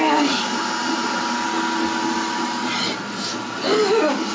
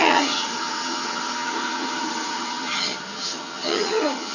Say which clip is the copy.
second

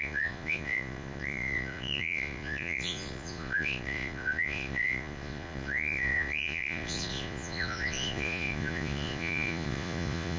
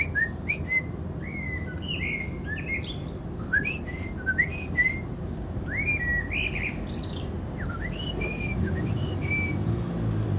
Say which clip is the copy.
first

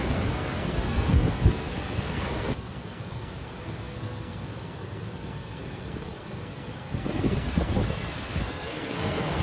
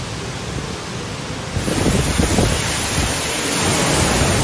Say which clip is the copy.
first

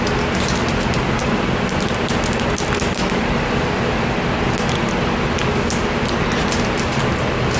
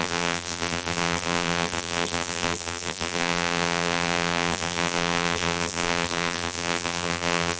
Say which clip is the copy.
second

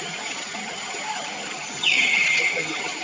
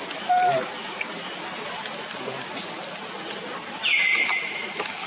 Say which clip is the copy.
first